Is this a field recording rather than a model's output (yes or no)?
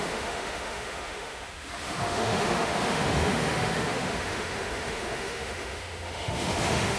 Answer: no